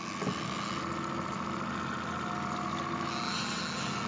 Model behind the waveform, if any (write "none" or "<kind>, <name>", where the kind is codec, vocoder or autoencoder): none